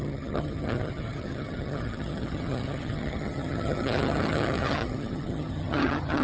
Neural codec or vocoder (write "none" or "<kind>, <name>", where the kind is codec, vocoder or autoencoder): vocoder, HiFi-GAN